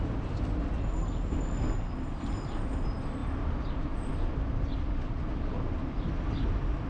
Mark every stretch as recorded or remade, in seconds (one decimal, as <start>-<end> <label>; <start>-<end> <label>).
0.0-3.2 recorded; 3.2-4.1 remade; 4.1-6.9 recorded